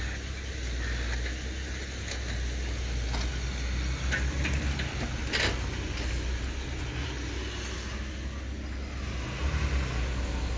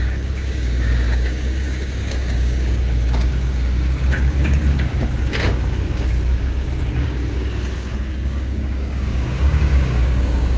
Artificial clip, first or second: second